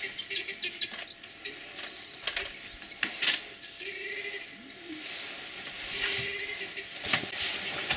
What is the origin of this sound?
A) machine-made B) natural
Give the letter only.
B